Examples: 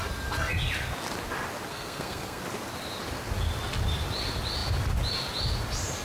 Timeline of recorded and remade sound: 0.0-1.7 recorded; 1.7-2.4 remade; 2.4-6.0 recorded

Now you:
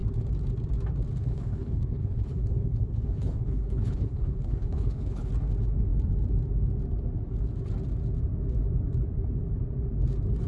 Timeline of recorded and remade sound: 0.0-1.2 recorded; 1.2-5.3 remade; 5.3-10.5 recorded

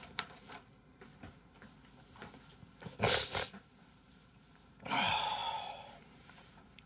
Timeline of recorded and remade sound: 0.0-1.1 remade; 1.1-3.3 recorded; 3.3-5.4 remade; 5.4-6.0 recorded; 6.0-6.9 remade

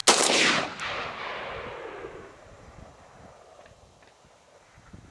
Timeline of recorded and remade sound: 0.0-0.8 recorded; 0.8-1.3 remade; 1.3-2.1 recorded; 2.1-5.1 remade

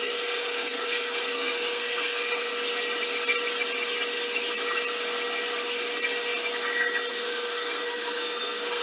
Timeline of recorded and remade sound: 0.0-2.5 remade; 2.5-7.1 recorded; 7.1-8.8 remade